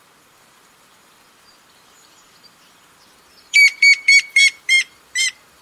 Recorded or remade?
remade